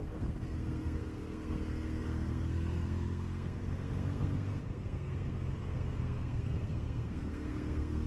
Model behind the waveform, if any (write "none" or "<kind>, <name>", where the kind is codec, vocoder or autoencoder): codec, SNAC